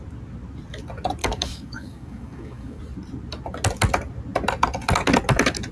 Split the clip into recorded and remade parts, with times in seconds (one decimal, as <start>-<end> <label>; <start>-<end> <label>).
0.0-1.2 recorded; 1.2-2.8 remade; 2.8-5.7 recorded